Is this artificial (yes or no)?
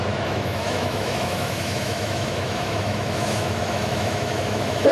yes